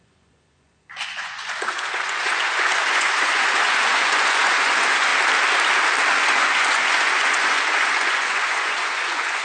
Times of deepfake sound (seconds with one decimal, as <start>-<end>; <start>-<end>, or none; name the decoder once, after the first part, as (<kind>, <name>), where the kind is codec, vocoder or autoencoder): 0.0-5.1 (vocoder, Vocos); 6.2-9.4